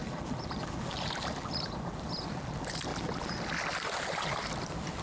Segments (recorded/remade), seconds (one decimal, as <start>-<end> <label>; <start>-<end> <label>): 0.0-2.9 remade; 2.9-3.9 recorded; 3.9-5.0 remade